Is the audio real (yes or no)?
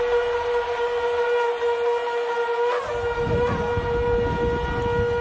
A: yes